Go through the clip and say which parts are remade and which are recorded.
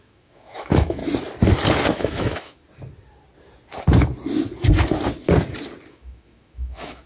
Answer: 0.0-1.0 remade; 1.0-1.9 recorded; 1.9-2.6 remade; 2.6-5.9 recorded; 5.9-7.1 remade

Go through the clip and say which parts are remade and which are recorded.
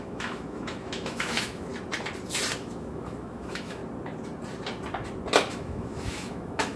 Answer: 0.0-1.7 remade; 1.7-2.6 recorded; 2.6-3.8 remade; 3.8-5.5 recorded; 5.5-6.8 remade